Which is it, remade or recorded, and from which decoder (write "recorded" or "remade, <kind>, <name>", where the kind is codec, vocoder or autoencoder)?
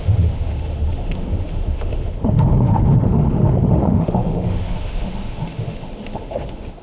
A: remade, autoencoder, DAC-VAE